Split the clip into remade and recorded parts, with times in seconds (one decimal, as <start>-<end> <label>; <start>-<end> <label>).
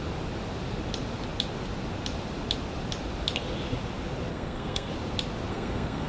0.0-4.3 recorded; 4.3-4.9 remade; 4.9-5.5 recorded; 5.5-6.1 remade